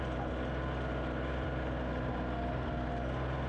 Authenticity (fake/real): real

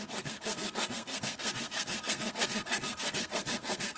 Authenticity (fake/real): fake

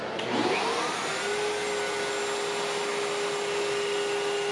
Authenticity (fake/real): real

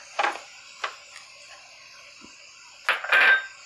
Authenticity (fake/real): real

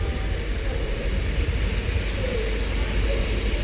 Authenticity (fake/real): real